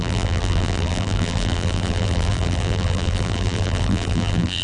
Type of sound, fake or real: fake